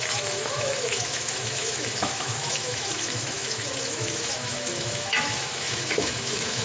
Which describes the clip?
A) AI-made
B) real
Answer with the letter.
A